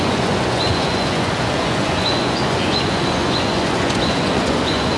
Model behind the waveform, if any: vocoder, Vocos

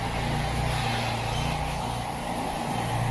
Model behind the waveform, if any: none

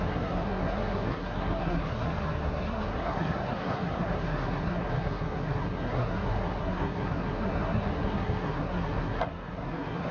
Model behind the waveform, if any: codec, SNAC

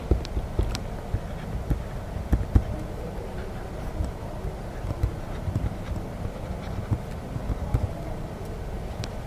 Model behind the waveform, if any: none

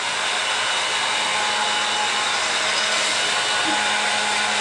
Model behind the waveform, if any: none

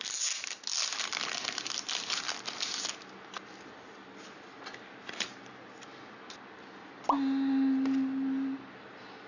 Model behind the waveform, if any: none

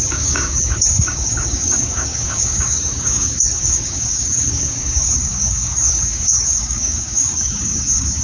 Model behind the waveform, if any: codec, DAC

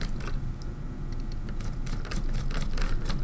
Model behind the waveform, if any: none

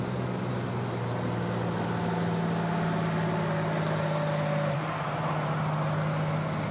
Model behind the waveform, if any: none